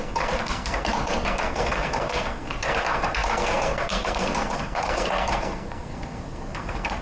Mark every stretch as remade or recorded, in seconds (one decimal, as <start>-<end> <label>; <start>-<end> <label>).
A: 0.0-7.0 remade